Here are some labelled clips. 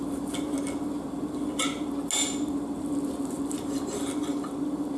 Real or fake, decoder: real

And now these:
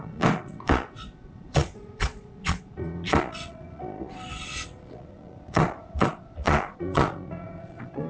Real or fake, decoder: fake, vocoder, Vocos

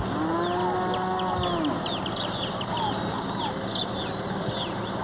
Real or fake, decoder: real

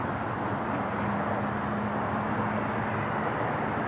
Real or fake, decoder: real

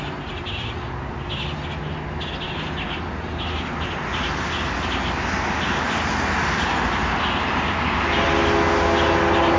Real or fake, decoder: real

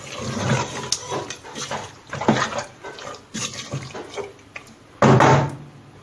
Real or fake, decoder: real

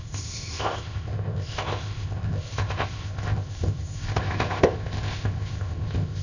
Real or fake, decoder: fake, codec, ZipCodec